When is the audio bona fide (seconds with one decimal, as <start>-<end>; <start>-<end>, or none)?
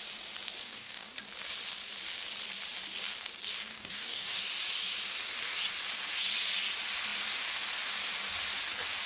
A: 0.0-0.6; 1.1-3.7; 4.4-9.1